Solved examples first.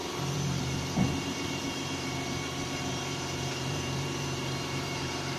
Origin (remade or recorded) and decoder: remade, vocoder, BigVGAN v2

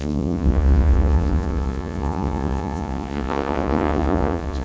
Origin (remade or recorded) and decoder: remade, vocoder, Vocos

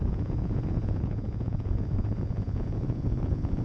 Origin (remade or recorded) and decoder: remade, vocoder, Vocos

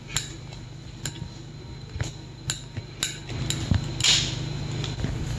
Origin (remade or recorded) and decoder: recorded